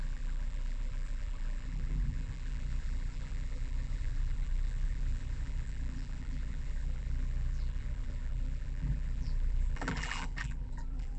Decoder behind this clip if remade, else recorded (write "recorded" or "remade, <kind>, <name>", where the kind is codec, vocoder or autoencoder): remade, vocoder, BigVGAN v2